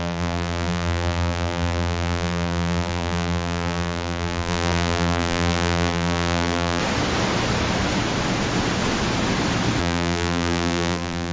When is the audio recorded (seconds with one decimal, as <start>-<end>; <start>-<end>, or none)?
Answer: 6.8-9.8